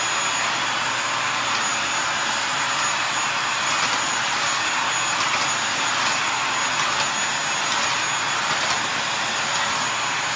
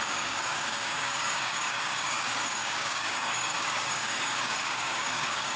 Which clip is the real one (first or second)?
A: first